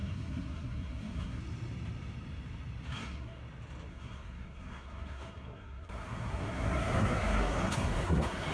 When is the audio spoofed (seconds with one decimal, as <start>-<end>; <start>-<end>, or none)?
0.0-1.4; 2.9-3.4; 3.9-8.5